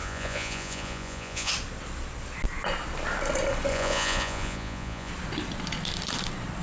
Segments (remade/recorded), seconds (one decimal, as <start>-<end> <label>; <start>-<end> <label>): 0.0-1.5 remade; 1.5-3.7 recorded; 3.7-5.1 remade; 5.1-6.6 recorded

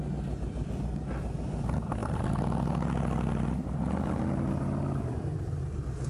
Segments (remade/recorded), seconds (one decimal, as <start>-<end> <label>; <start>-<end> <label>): 0.0-6.1 recorded